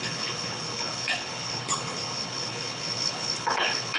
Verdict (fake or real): fake